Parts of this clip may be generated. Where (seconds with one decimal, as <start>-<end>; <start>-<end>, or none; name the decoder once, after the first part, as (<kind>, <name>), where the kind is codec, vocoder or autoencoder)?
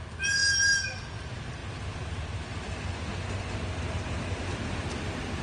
none